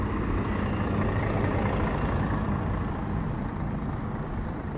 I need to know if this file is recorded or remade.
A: recorded